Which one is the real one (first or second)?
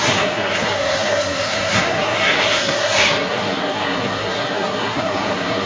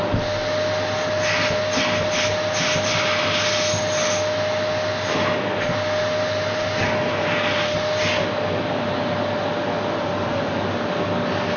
second